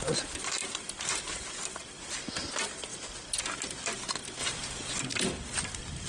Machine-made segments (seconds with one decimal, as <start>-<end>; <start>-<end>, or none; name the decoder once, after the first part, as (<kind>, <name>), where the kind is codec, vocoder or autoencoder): 4.4-5.0 (vocoder, Vocos)